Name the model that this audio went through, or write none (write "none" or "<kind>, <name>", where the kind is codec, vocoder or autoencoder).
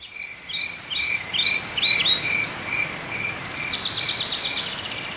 none